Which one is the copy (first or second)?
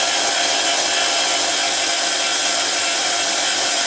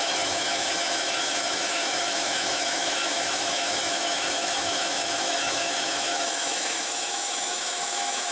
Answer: second